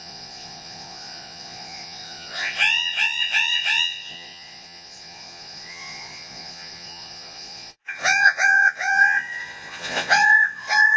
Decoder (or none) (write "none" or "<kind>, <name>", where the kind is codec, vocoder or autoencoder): vocoder, Vocos